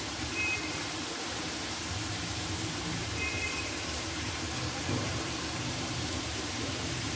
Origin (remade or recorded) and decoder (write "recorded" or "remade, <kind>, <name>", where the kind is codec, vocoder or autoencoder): remade, vocoder, BigVGAN v2